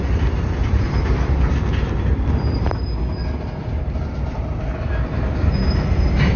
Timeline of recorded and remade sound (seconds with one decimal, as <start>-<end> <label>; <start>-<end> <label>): 0.0-0.6 recorded; 0.6-4.4 remade; 4.4-6.4 recorded